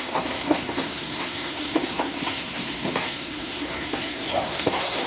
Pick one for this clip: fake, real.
fake